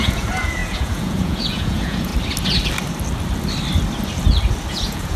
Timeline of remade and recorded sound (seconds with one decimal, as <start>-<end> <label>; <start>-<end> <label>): 0.0-2.1 remade; 2.1-4.7 recorded; 4.7-5.2 remade